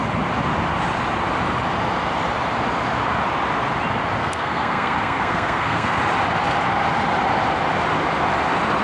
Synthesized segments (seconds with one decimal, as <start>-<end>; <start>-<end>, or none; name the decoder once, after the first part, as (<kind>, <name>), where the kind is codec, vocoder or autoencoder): 4.2-6.0 (codec, SNAC)